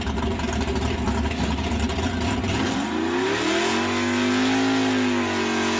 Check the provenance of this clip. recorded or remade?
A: recorded